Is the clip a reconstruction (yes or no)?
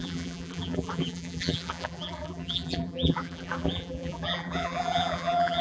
yes